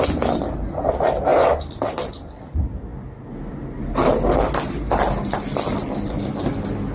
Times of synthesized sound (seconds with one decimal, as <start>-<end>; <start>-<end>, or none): none